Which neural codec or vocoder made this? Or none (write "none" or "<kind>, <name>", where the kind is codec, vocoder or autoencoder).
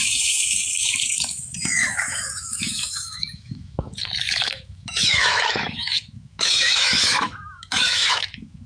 autoencoder, DAC-VAE